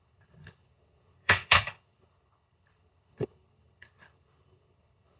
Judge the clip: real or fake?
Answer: fake